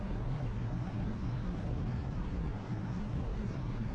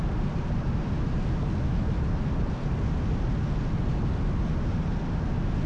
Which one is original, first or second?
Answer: second